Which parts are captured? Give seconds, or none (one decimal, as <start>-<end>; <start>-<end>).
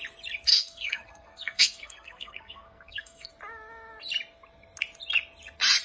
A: 0.0-0.5; 3.3-5.8